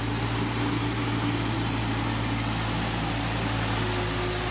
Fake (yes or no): no